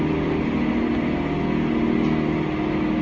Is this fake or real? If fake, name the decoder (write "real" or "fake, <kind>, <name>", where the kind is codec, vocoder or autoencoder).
real